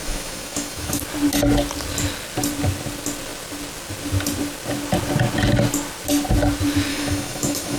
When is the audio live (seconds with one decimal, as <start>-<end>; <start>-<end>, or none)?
1.0-6.9